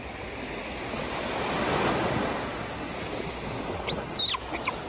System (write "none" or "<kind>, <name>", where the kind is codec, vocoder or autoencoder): none